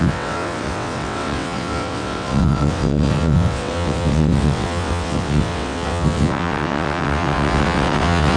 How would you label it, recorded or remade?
remade